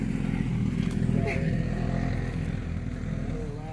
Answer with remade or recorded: recorded